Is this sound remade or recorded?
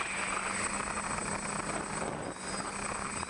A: recorded